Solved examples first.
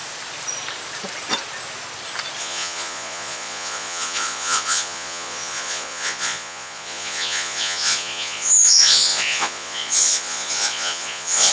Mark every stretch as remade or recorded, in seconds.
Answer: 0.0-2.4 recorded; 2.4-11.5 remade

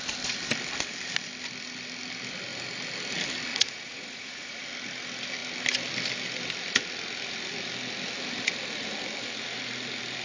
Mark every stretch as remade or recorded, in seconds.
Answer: 0.0-3.5 recorded; 3.5-4.6 remade; 4.6-10.2 recorded

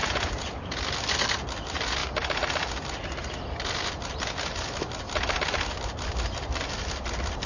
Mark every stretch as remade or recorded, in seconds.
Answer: 0.0-0.8 remade; 0.8-7.5 recorded

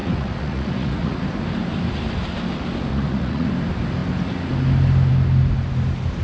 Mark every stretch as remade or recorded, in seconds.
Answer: 0.0-1.2 remade; 1.2-2.9 recorded; 2.9-3.5 remade; 3.5-6.2 recorded